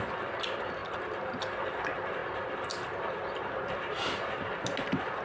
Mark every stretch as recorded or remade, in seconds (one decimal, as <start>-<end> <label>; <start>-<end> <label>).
0.0-0.8 recorded; 0.8-1.4 remade; 1.4-5.2 recorded